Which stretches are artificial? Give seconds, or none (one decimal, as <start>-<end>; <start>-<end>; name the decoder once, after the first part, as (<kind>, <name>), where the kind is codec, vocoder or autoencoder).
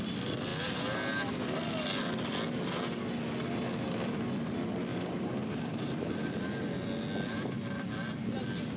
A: 4.9-5.9 (vocoder, BigVGAN v2)